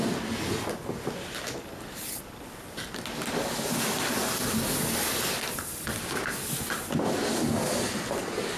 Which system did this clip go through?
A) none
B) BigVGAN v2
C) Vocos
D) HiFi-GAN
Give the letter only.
A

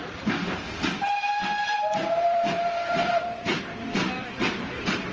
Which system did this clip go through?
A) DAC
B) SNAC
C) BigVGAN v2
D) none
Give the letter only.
C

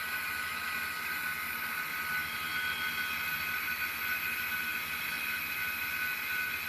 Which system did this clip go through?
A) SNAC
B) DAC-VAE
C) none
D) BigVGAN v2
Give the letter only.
C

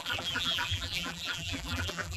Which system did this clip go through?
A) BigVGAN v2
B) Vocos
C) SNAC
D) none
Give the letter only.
A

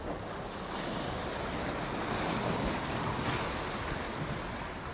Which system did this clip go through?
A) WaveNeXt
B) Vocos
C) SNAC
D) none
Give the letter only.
D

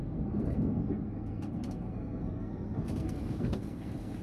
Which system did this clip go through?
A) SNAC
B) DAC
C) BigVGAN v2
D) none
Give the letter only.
A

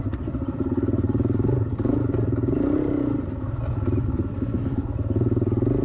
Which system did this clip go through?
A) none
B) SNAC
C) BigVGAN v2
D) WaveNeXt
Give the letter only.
A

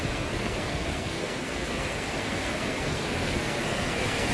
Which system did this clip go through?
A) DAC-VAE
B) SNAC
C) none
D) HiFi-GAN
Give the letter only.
B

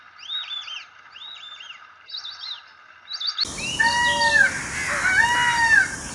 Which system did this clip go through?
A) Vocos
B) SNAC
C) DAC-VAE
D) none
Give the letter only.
D